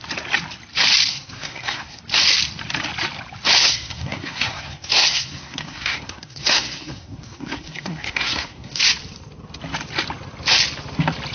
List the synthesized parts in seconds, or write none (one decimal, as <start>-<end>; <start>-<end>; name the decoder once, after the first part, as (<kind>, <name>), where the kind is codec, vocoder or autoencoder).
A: 1.1-2.0 (codec, SNAC); 3.6-8.8